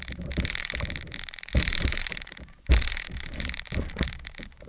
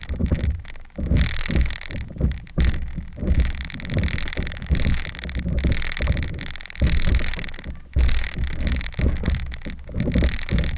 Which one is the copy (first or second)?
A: first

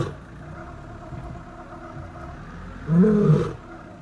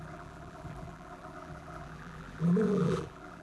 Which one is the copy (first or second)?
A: second